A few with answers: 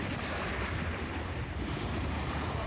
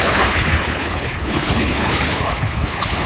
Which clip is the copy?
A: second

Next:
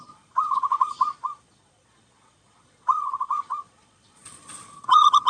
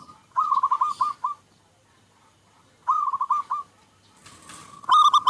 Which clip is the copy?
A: first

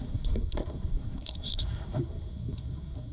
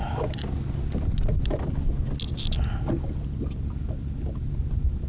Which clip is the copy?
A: first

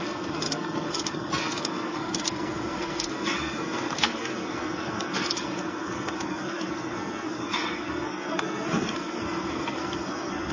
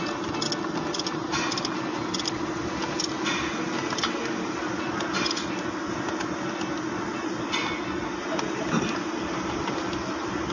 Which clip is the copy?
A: first